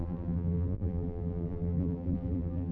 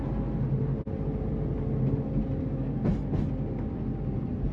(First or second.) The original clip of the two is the second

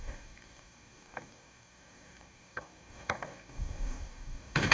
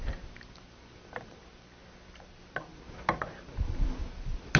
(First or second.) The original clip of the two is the second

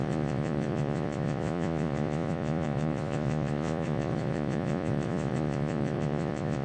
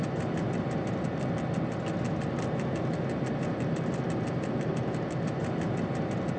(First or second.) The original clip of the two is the second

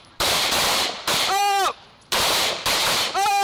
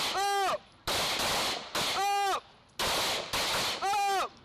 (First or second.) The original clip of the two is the second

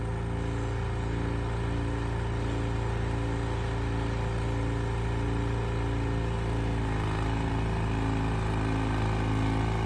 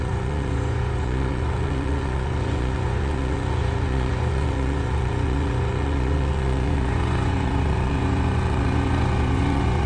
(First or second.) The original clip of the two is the first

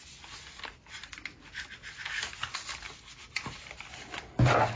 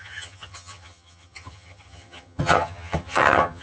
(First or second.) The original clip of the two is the first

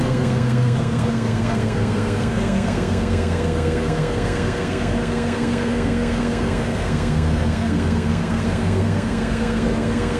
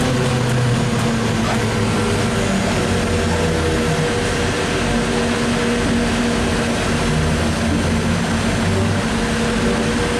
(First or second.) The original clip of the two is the second